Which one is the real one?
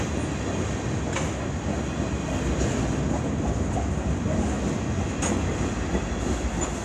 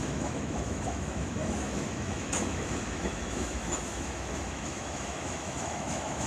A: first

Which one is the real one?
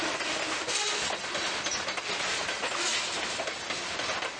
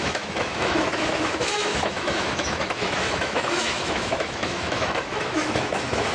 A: first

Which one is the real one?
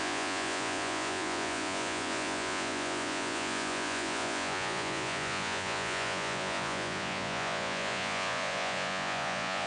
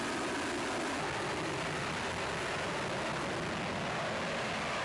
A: second